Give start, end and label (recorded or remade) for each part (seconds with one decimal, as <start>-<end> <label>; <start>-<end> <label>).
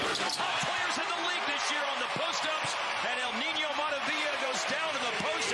0.0-1.0 recorded; 1.0-3.3 remade; 3.3-3.7 recorded; 3.7-5.5 remade